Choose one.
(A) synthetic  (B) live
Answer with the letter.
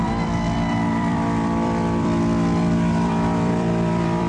A